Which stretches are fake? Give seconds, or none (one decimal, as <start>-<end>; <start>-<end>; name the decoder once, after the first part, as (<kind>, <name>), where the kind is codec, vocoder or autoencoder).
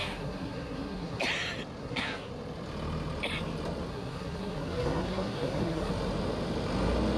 0.0-1.2 (codec, SNAC); 1.8-2.3; 3.9-5.9